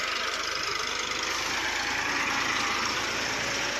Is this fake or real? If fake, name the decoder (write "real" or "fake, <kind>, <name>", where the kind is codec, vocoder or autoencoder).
real